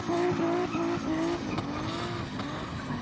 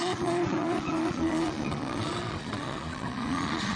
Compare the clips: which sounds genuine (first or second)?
first